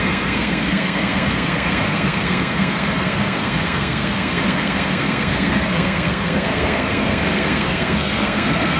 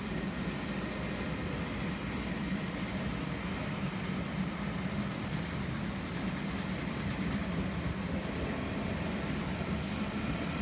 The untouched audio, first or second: second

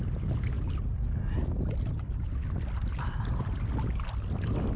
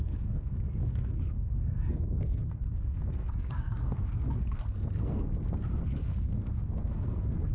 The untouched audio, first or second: first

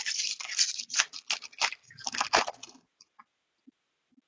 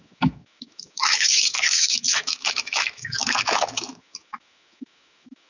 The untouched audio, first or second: first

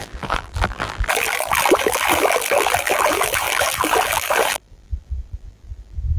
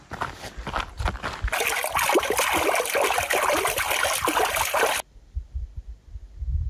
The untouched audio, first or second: second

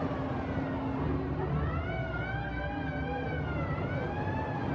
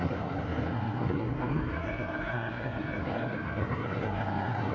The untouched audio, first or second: first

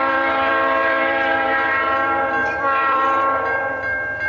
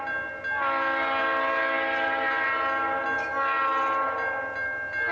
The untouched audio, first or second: second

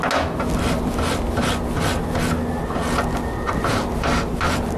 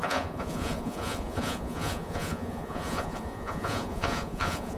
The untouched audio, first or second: first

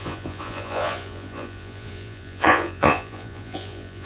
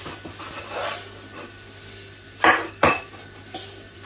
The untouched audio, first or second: second